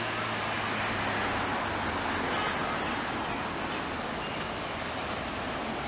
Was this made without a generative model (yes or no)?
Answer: yes